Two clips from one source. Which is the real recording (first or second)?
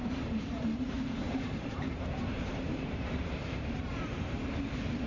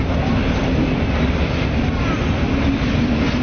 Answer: second